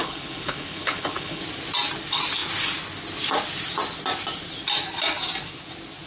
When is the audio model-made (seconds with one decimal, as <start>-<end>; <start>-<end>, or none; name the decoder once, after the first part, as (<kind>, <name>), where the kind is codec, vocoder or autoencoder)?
0.0-1.4 (codec, HILCodec)